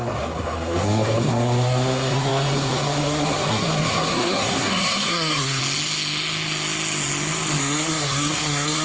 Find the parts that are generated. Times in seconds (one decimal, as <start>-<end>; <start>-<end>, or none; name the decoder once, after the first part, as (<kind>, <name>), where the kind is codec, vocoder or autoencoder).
0.0-5.6 (codec, SNAC); 7.6-8.8